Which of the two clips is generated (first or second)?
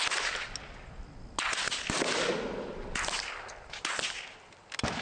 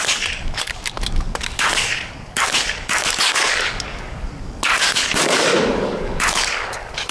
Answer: second